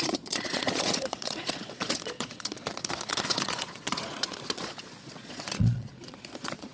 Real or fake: fake